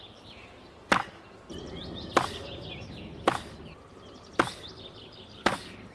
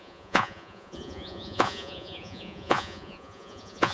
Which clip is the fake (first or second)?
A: second